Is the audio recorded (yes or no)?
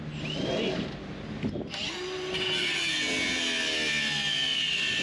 yes